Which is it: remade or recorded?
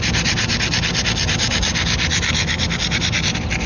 recorded